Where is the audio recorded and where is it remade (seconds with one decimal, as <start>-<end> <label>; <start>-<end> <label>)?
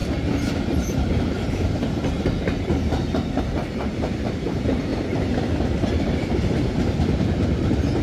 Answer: 0.0-4.9 remade; 4.9-7.2 recorded; 7.2-8.0 remade